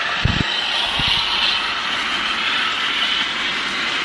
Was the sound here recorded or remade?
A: recorded